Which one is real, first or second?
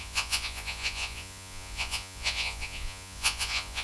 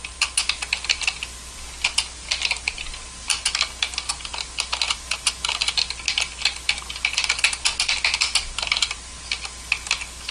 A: second